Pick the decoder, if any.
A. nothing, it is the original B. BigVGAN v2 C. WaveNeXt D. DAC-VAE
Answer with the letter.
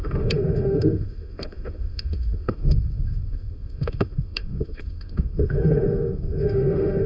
D